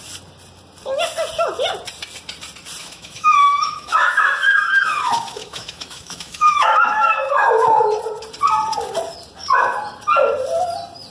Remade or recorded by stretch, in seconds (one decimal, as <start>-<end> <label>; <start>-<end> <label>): 0.0-2.8 recorded; 2.8-7.8 remade; 7.8-11.1 recorded